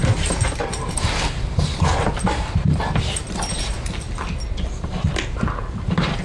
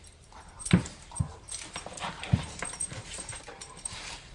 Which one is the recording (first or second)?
first